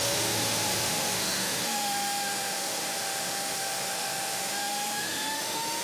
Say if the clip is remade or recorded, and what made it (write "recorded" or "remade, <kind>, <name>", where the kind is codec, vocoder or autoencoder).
remade, autoencoder, DAC-VAE